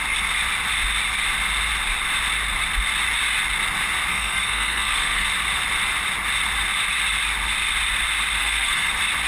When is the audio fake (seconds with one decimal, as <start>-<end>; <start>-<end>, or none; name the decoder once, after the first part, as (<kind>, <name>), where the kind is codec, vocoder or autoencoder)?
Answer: 4.1-5.3 (codec, SNAC); 8.4-8.9